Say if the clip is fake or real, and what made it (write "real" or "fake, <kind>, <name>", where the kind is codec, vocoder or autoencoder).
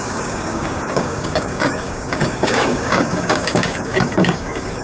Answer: fake, codec, DAC